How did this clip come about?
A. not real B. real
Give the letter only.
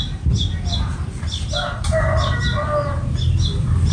B